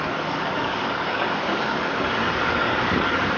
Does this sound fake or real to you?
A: fake